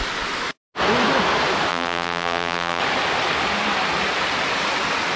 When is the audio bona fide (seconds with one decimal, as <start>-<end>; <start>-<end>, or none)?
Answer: 0.0-1.7; 2.8-5.2